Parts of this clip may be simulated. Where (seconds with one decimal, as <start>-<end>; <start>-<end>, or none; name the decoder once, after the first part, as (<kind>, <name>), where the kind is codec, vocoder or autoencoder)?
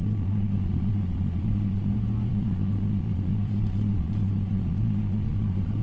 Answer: 0.0-1.9 (vocoder, Vocos); 2.3-5.8